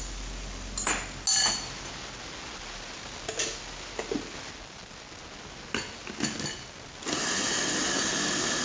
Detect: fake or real real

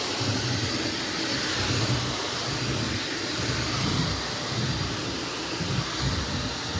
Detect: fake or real real